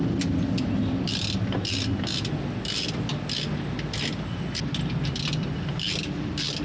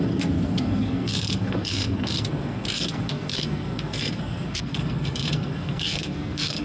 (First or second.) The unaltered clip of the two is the first